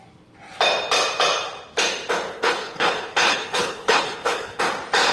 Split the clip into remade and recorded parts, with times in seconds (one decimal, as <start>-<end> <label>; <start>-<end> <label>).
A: 0.0-2.3 recorded; 2.3-4.6 remade; 4.6-5.1 recorded